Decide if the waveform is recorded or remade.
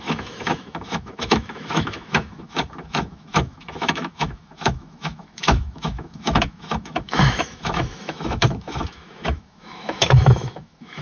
remade